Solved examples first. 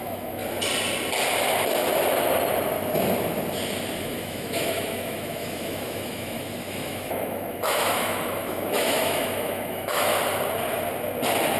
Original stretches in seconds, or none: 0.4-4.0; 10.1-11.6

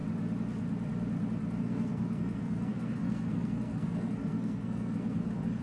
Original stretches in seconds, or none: 0.0-1.6